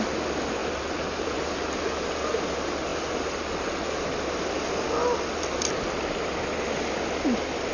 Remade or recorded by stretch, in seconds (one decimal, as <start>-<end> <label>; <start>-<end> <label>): 0.0-7.7 recorded